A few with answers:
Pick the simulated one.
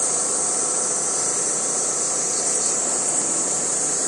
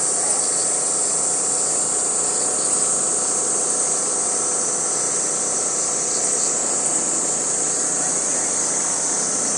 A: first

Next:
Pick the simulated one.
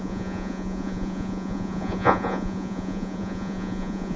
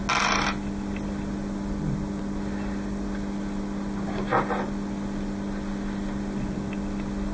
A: first